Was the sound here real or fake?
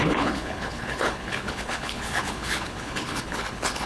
fake